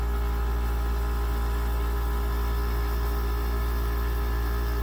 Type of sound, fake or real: real